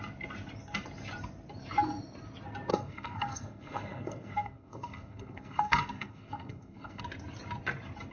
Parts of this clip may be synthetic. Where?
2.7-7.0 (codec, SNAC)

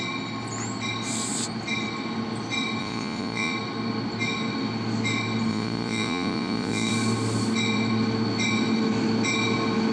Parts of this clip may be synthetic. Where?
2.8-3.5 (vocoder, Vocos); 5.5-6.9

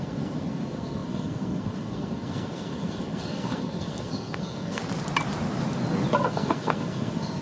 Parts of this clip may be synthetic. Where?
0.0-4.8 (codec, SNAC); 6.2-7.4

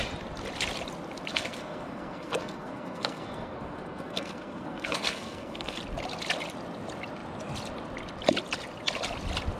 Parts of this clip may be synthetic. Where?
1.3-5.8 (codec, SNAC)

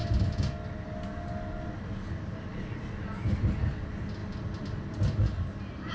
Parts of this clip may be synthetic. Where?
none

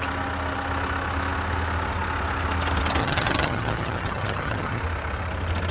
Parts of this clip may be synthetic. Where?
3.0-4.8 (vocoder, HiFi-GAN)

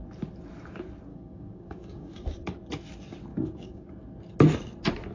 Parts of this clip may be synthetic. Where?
1.1-2.5 (codec, DAC); 3.3-3.9

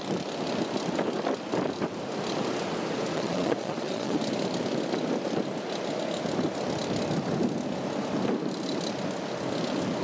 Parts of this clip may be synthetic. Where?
3.1-4.2 (vocoder, Vocos)